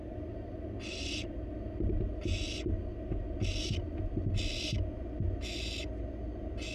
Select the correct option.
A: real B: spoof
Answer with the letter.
A